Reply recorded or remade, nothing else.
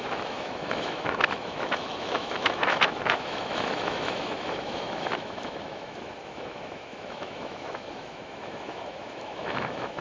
remade